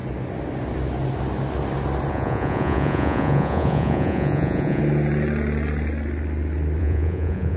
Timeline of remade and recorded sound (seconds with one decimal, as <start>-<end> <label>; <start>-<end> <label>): 0.0-2.1 recorded; 2.1-4.8 remade; 4.8-6.8 recorded; 6.8-7.6 remade